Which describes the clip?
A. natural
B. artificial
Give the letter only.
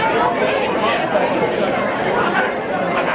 B